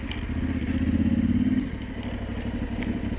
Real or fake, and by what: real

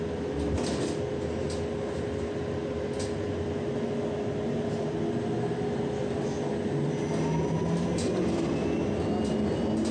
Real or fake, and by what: real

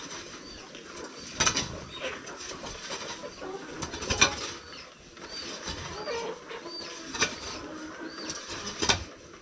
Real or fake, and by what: real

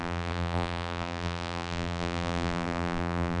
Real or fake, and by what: fake, vocoder, BigVGAN v2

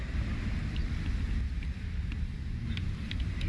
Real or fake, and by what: real